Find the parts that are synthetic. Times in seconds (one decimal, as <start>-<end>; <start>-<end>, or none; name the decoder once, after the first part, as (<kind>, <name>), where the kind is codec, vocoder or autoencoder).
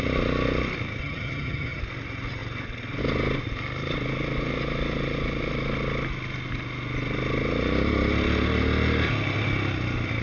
1.0-1.8 (vocoder, HiFi-GAN)